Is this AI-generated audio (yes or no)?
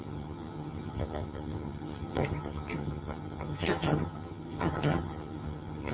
yes